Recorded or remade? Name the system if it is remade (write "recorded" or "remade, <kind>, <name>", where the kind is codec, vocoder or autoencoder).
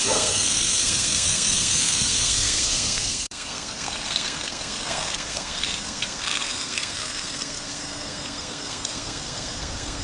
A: remade, codec, SNAC